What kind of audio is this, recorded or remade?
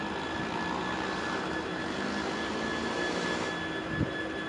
recorded